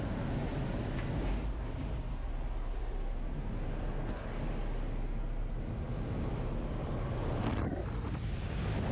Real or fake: real